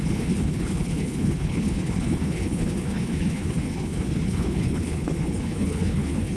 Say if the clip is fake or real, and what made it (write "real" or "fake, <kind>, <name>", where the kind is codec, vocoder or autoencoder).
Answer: fake, codec, HILCodec